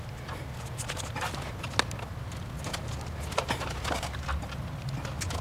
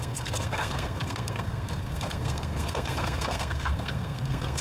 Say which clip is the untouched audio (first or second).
first